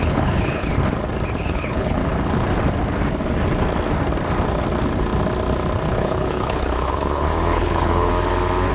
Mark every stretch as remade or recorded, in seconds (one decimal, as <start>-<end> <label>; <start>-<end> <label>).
0.0-0.7 remade; 0.7-1.4 recorded; 1.4-2.0 remade; 2.0-5.9 recorded; 5.9-8.1 remade; 8.1-8.7 recorded